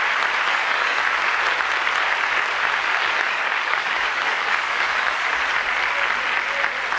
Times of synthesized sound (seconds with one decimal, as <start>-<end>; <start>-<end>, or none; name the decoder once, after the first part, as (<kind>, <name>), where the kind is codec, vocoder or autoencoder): 0.5-1.0 (codec, DAC); 2.9-5.4